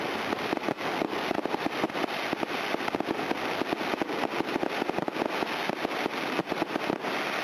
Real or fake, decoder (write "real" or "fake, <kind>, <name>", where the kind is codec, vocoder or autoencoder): real